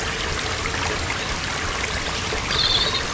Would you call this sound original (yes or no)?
yes